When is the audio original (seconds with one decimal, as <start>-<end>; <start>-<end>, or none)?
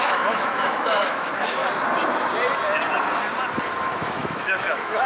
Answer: 1.6-3.8